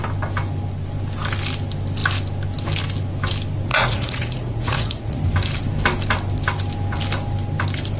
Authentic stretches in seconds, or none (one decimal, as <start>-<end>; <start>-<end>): 0.0-3.7; 5.2-8.0